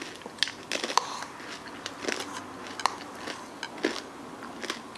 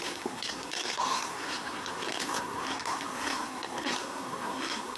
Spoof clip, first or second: second